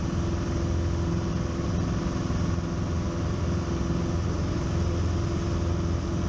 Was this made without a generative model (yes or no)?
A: yes